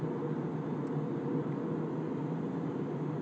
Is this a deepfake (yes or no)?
no